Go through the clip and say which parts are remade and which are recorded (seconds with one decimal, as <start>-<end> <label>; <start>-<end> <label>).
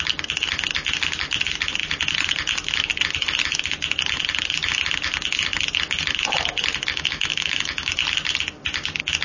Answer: 0.0-6.9 recorded; 6.9-7.9 remade; 7.9-9.2 recorded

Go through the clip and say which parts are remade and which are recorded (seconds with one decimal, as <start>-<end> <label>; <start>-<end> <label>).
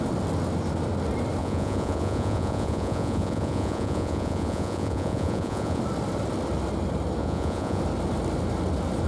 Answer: 0.0-1.4 recorded; 1.4-5.8 remade; 5.8-7.2 recorded; 7.2-7.8 remade; 7.8-9.1 recorded